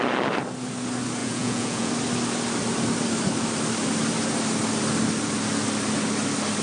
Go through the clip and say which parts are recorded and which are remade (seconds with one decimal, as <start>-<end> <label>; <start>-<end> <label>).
0.0-1.2 recorded; 1.2-1.9 remade; 1.9-6.6 recorded